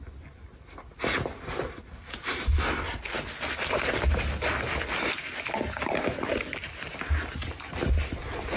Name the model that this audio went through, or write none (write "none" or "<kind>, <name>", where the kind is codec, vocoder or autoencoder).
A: none